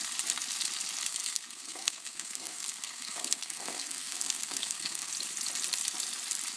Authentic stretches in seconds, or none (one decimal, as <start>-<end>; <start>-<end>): 0.0-1.1; 5.1-6.6